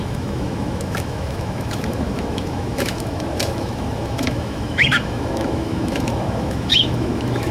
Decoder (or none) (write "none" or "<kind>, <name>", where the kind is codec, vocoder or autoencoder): autoencoder, DAC-VAE